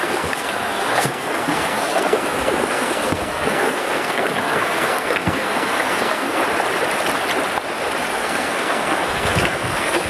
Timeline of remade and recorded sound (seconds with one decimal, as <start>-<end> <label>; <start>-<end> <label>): 0.0-6.4 remade; 6.4-8.1 recorded; 8.1-10.1 remade